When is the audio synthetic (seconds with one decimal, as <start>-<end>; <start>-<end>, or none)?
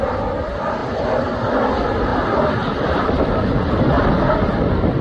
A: none